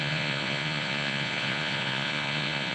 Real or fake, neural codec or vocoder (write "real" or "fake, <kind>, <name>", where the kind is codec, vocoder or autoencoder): fake, vocoder, Vocos